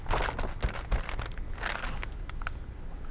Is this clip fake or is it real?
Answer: real